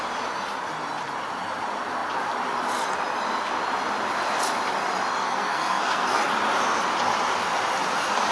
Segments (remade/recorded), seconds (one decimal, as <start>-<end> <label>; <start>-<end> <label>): 0.0-5.2 recorded; 5.2-6.3 remade; 6.3-8.3 recorded